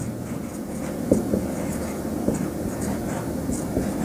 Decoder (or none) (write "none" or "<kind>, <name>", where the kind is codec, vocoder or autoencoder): none